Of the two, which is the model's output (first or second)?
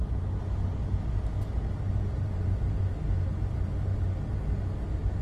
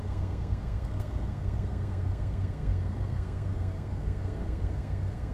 second